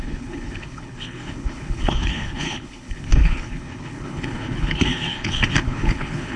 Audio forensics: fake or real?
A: fake